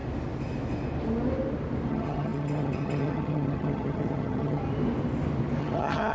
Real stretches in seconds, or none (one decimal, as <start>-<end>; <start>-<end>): 0.0-1.9; 4.6-5.6